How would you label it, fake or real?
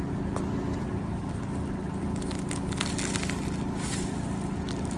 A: real